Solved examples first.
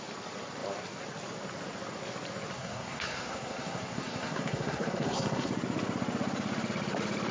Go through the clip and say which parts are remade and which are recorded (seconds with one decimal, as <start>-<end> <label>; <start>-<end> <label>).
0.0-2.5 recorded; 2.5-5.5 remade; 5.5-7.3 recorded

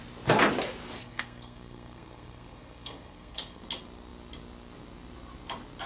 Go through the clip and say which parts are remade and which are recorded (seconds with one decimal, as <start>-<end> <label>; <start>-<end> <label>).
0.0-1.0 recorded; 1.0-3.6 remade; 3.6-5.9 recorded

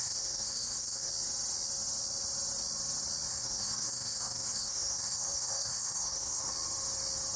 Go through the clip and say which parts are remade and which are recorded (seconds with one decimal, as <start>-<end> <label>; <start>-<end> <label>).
0.0-1.1 remade; 1.1-3.3 recorded; 3.3-6.5 remade; 6.5-7.4 recorded